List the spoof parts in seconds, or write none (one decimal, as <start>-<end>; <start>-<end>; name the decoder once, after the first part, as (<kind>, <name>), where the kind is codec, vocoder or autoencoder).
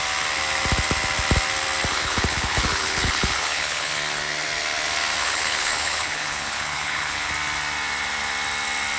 1.9-3.9 (codec, HILCodec); 5.2-7.3